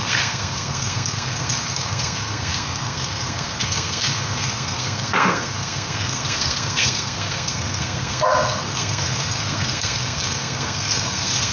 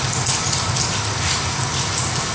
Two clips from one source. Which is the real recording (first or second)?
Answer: second